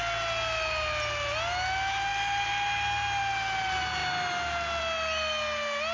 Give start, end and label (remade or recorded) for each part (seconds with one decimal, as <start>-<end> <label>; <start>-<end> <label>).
0.0-5.9 recorded